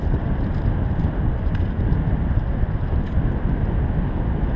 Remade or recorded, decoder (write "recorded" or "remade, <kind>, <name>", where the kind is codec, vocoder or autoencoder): recorded